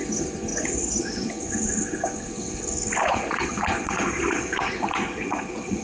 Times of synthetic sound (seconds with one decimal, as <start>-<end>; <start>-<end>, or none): 0.5-1.3; 3.0-5.8